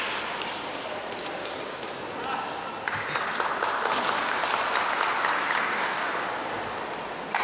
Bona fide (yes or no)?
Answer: yes